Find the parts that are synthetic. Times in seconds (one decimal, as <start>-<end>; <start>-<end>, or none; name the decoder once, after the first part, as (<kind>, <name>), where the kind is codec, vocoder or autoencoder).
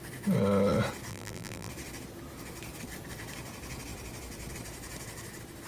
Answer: 1.1-1.7 (vocoder, BigVGAN v2)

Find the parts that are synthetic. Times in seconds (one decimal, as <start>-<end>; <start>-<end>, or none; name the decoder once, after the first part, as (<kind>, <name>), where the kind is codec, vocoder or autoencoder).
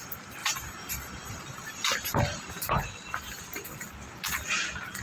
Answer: 0.4-3.4 (vocoder, BigVGAN v2)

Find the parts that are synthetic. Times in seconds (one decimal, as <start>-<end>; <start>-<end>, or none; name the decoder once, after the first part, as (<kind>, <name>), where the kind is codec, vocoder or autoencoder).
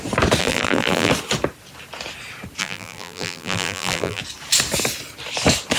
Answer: 0.4-1.1 (vocoder, BigVGAN v2); 2.6-4.2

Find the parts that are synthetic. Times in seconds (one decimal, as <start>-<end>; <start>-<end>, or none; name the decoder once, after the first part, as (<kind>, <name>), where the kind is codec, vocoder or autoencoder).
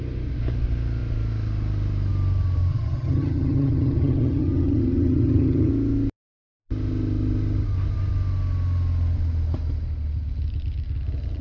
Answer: 2.7-5.7 (vocoder, HiFi-GAN)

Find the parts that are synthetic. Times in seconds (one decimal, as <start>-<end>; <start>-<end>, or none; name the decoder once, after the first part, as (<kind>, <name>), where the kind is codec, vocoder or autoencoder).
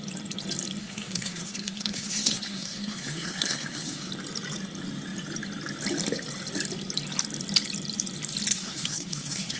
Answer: 0.8-4.1 (codec, SNAC); 8.5-9.6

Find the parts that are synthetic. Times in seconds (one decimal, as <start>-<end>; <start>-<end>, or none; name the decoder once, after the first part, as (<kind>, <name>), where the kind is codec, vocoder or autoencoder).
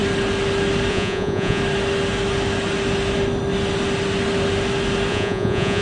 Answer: 0.9-1.6 (vocoder, Vocos); 5.1-5.8